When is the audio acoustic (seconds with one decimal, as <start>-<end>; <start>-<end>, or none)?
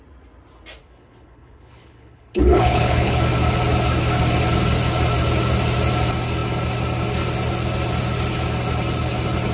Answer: 0.0-0.8; 3.2-9.5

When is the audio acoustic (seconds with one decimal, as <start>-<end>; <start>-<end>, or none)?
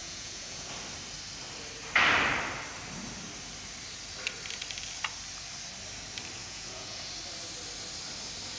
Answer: 0.7-6.4; 7.1-8.6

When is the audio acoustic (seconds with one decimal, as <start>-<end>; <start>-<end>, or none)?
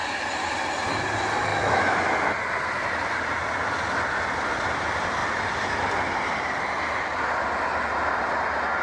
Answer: 0.0-1.5; 2.0-8.8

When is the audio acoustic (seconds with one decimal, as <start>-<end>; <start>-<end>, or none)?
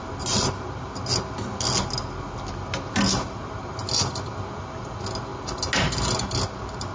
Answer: 0.0-6.9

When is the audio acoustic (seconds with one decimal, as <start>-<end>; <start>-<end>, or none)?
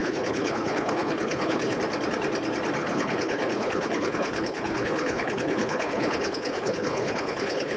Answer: 1.8-2.8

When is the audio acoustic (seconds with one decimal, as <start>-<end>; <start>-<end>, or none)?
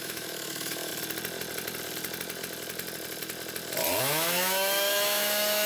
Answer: 0.9-4.0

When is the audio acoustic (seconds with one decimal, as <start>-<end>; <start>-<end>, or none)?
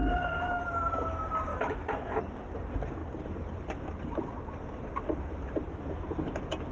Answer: 0.6-1.5; 2.2-6.7